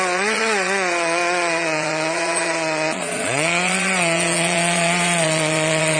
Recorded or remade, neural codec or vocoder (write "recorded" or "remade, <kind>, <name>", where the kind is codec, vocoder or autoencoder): remade, vocoder, Vocos